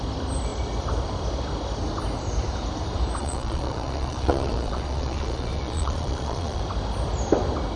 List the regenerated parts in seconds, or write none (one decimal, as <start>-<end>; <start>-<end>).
3.2-6.6